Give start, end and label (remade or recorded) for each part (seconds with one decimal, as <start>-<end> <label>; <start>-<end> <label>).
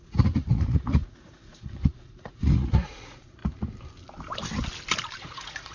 0.0-3.4 remade; 3.4-5.2 recorded; 5.2-5.7 remade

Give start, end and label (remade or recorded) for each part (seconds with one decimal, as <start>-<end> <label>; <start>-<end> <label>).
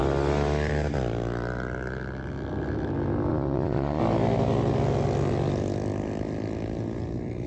0.0-3.3 recorded; 3.3-4.0 remade; 4.0-7.5 recorded